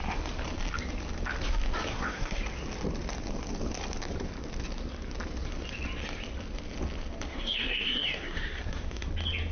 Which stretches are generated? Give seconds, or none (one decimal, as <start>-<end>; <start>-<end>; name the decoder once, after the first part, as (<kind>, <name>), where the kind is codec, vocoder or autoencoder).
1.9-2.4 (codec, SNAC); 7.3-9.1

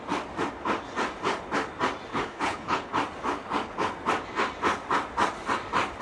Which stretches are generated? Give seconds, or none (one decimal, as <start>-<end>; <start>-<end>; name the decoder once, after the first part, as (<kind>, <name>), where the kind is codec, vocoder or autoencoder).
2.1-2.9 (codec, HILCodec)

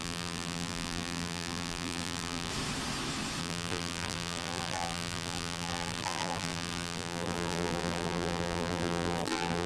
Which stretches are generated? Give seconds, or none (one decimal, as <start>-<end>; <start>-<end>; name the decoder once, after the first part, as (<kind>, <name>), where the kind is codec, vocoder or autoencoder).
0.0-2.5 (vocoder, BigVGAN v2); 3.4-9.7

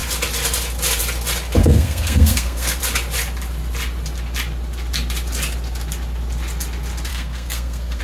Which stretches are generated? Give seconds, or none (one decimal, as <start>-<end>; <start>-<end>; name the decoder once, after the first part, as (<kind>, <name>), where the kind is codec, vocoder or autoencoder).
1.6-2.8 (codec, SNAC); 7.1-8.0

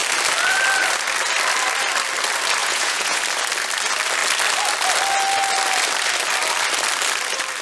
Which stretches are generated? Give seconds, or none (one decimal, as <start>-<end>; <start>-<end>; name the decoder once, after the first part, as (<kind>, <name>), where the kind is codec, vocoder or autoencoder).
2.6-3.2 (vocoder, Vocos)

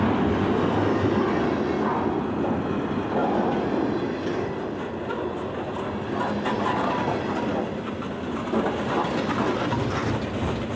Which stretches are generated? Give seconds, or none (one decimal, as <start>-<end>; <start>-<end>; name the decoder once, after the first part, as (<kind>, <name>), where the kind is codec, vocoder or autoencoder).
none

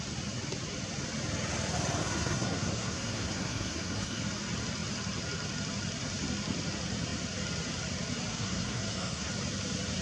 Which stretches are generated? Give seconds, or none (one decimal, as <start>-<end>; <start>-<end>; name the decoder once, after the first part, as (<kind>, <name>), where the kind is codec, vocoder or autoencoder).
2.0-4.2 (codec, SNAC); 8.3-9.3

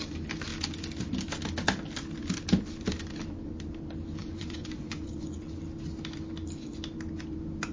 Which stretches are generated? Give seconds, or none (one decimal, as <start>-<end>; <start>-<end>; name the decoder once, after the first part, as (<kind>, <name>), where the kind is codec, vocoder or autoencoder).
4.2-5.5 (vocoder, Vocos)